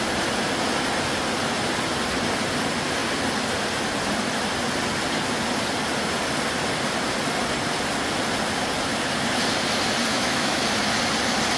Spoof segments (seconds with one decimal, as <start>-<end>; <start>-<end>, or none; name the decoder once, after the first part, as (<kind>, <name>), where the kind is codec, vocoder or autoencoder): 10.1-10.6 (autoencoder, DAC-VAE)